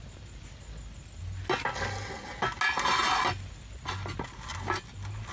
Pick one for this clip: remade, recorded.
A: recorded